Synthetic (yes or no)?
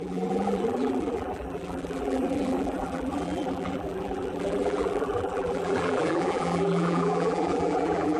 yes